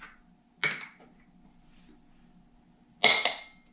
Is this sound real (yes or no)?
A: yes